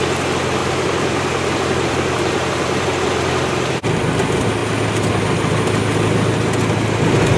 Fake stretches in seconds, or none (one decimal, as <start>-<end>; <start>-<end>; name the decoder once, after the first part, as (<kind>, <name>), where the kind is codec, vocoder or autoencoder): 0.6-3.7 (vocoder, BigVGAN v2)